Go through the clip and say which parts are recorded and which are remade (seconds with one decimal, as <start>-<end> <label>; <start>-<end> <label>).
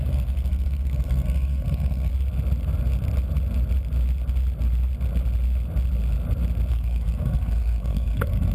0.0-2.1 remade; 2.1-6.7 recorded; 6.7-8.5 remade